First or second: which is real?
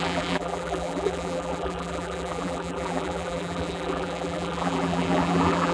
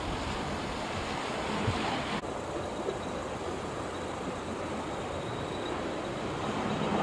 second